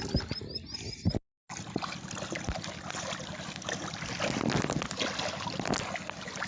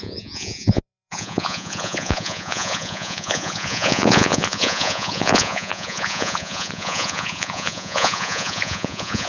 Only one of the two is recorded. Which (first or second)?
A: first